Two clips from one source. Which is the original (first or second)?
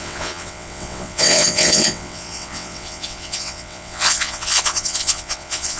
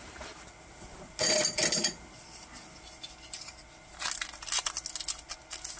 second